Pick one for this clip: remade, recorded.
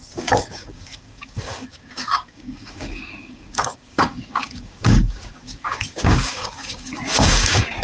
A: remade